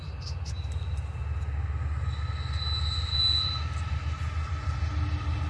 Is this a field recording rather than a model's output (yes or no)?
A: yes